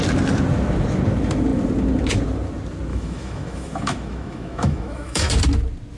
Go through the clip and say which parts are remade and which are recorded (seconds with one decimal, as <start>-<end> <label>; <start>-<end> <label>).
0.0-2.9 recorded; 2.9-5.3 remade; 5.3-6.0 recorded